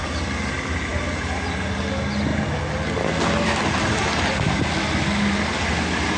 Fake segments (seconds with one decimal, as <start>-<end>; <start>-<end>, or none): none